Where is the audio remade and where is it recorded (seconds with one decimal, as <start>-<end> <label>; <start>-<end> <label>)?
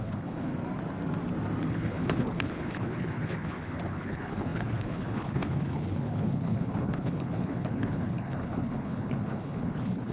0.0-0.5 remade; 0.5-1.7 recorded; 1.7-10.1 remade